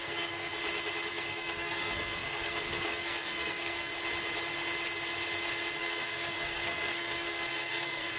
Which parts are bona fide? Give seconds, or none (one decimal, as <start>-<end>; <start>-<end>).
0.5-1.1; 3.9-5.8